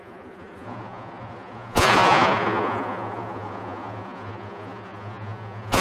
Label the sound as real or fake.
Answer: fake